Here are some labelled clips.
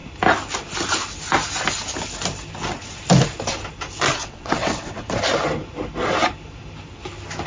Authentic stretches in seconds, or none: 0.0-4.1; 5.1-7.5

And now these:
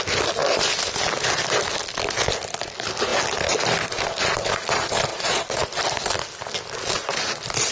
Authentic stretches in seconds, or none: 0.0-5.1; 5.7-7.7

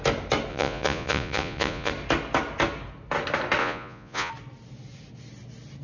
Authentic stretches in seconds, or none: 0.0-0.5; 1.9-3.6; 4.3-5.8

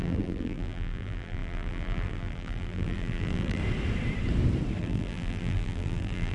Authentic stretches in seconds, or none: 3.6-4.8

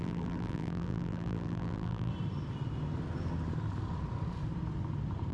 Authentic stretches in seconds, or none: 2.1-5.3